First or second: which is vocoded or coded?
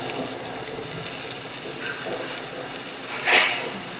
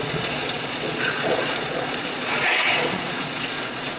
second